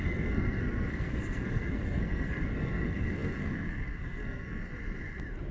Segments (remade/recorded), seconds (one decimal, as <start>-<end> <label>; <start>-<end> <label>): 0.0-4.7 remade; 4.7-5.5 recorded